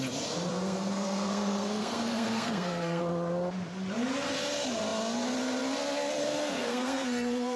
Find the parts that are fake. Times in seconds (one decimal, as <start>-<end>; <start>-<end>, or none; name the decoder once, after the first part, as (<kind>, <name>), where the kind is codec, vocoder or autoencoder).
0.5-3.0 (codec, SNAC); 6.2-7.6